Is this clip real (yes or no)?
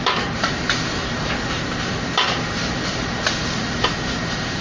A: no